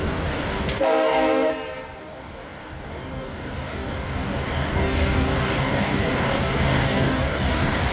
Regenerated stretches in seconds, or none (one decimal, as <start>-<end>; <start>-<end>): 0.0-1.5; 2.0-7.9